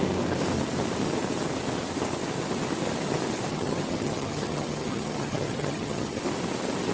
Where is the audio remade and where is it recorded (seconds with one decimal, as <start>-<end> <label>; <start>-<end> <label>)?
0.0-3.5 recorded; 3.5-6.2 remade; 6.2-6.9 recorded